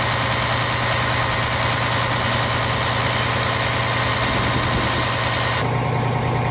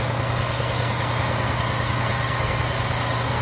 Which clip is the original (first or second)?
first